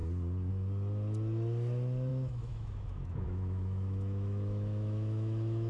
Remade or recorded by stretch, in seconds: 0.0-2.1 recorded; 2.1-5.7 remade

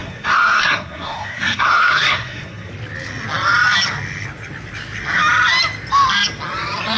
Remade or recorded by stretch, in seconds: 0.0-2.7 remade; 2.7-7.0 recorded

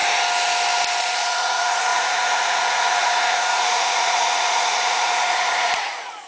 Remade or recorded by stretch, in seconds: 0.0-1.0 recorded; 1.0-6.3 remade